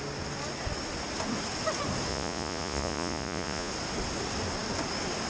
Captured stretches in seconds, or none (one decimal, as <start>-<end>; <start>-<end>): 0.0-2.1; 3.7-5.3

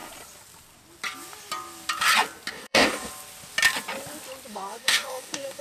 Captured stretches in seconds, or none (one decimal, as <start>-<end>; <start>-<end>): 0.0-2.5; 3.1-4.5

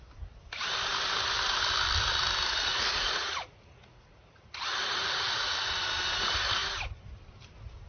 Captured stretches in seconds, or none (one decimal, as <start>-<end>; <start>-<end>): 0.0-2.7; 5.6-7.9

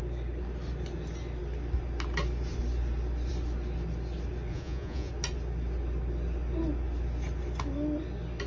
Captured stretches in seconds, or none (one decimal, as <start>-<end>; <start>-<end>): 0.0-4.5; 5.1-8.5

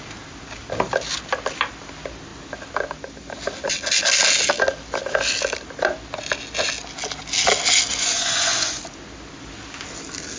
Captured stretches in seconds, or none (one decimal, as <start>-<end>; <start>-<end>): 0.0-7.9; 8.8-10.4

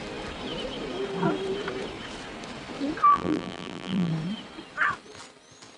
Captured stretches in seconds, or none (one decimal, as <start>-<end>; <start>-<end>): 0.0-3.1; 4.1-5.8

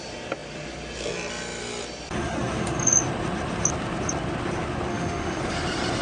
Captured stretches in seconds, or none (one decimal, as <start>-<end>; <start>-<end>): 0.0-4.9; 5.4-6.0